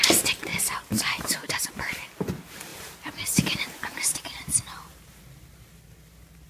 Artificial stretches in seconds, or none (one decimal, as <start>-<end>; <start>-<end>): 0.5-2.1; 2.7-5.2